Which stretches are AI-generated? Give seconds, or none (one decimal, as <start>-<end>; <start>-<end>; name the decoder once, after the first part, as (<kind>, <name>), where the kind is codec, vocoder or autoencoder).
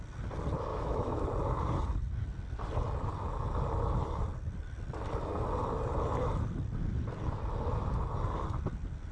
0.7-1.2 (autoencoder, DAC-VAE)